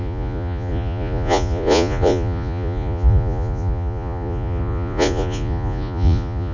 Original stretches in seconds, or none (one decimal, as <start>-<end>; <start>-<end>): none